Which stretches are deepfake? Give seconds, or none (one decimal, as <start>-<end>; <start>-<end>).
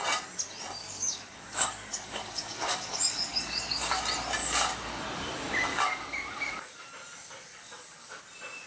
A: 0.8-4.0; 4.4-5.0; 5.7-6.9; 7.5-8.2